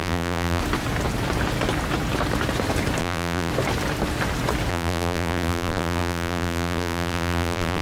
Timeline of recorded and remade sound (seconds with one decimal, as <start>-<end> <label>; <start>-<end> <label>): 0.0-0.6 remade; 0.6-3.0 recorded; 3.0-3.5 remade; 3.5-4.7 recorded; 4.7-7.8 remade